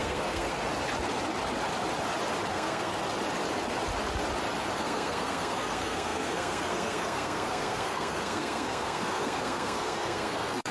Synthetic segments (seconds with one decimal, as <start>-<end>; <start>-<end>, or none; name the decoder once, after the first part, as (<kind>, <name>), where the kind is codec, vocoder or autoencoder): 0.0-0.5 (codec, SNAC); 2.5-2.9; 4.7-10.7